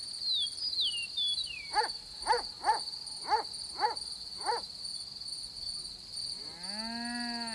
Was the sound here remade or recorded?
recorded